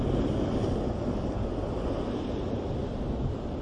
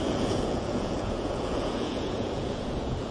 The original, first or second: first